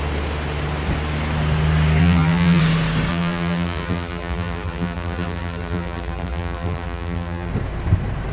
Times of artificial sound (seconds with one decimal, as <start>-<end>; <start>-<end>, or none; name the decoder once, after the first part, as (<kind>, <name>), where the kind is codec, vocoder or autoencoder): 2.0-2.6 (vocoder, BigVGAN v2); 3.1-7.5